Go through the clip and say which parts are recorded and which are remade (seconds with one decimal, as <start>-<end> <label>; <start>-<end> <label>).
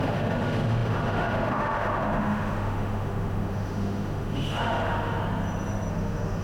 0.0-5.2 remade; 5.2-5.9 recorded; 5.9-6.4 remade